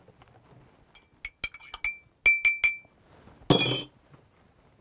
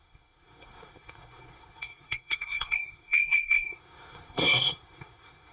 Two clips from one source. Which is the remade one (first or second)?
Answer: second